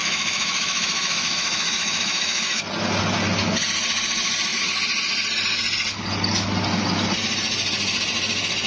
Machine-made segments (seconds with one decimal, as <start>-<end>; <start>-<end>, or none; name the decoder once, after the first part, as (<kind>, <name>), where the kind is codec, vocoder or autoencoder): 0.0-2.6 (autoencoder, DAC-VAE)